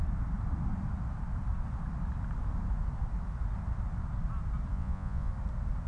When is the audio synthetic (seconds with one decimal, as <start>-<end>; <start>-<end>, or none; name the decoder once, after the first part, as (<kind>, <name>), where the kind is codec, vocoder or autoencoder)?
4.7-5.3 (vocoder, Vocos)

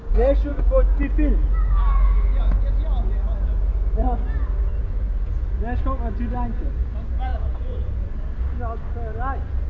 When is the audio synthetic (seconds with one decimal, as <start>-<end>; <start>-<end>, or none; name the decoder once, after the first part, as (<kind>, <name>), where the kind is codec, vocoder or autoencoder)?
4.7-5.3 (vocoder, Vocos); 7.3-8.1

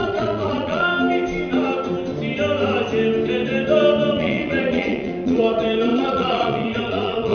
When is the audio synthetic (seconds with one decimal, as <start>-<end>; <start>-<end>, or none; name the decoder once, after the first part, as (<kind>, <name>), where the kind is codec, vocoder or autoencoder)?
0.0-0.9 (vocoder, Vocos); 4.1-7.3

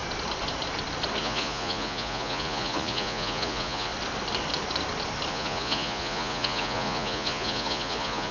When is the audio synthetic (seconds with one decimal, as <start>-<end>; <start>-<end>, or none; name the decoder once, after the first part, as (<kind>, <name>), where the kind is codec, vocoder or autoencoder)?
1.2-3.9 (vocoder, Vocos); 5.3-8.3

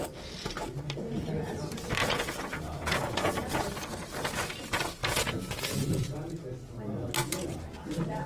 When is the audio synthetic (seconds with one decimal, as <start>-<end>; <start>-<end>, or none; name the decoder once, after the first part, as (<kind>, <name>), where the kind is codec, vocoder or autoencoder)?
2.0-3.6 (vocoder, Vocos); 5.0-6.3; 7.2-7.9

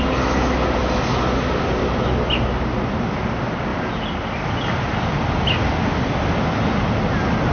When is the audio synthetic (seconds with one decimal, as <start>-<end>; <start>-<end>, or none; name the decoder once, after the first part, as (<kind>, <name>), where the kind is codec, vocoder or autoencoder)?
none

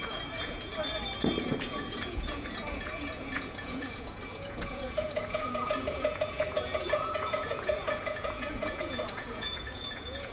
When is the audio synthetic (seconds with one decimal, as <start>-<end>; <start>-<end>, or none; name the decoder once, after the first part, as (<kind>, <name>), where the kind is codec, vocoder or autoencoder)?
0.0-0.7 (vocoder, Vocos); 1.4-10.3

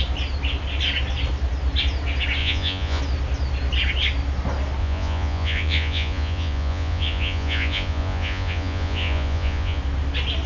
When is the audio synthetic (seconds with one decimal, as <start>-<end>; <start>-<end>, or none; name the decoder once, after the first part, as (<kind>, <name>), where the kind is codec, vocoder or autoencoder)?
2.4-3.0 (vocoder, Vocos); 4.8-9.8